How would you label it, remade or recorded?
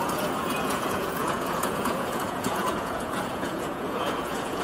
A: remade